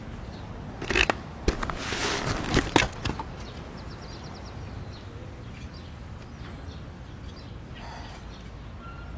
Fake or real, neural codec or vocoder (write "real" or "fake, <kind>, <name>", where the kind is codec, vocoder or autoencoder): real